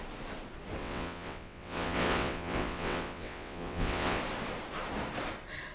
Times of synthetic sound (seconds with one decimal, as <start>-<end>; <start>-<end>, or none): 0.8-4.2